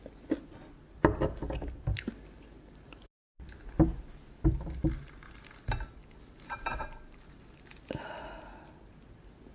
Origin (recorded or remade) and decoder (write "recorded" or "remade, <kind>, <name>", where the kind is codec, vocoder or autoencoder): recorded